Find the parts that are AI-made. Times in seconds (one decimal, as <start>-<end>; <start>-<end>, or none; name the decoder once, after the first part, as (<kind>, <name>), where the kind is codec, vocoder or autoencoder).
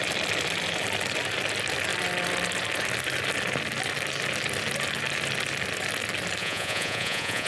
6.4-7.5 (vocoder, Vocos)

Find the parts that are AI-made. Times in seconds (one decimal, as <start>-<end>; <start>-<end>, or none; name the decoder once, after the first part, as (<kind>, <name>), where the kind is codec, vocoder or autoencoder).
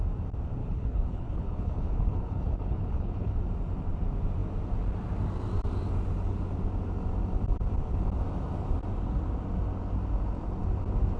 0.6-3.4 (codec, HILCodec)